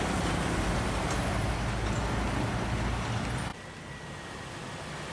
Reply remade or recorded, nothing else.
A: recorded